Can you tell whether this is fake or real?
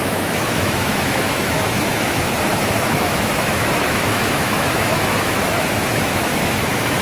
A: fake